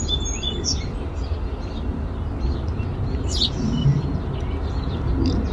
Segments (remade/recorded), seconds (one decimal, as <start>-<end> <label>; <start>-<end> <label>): 0.0-5.5 recorded